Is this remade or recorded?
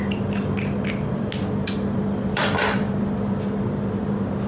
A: recorded